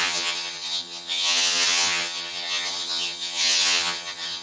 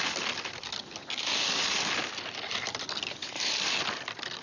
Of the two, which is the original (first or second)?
second